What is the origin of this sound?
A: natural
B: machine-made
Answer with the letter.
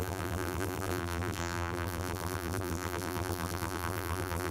B